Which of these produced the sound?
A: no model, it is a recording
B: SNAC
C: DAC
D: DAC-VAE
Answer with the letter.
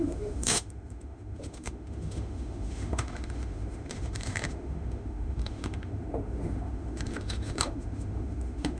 D